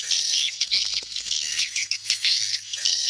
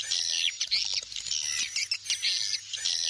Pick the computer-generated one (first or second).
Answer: first